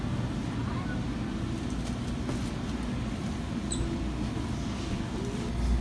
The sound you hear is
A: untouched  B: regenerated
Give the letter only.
A